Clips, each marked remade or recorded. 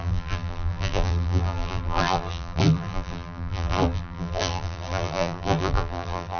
remade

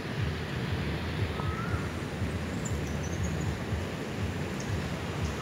recorded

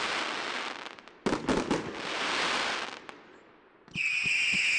recorded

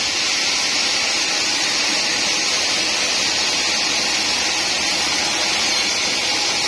recorded